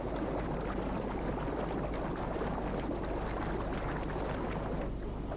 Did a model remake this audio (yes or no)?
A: no